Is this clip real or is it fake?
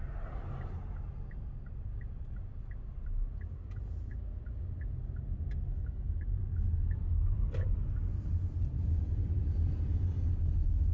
real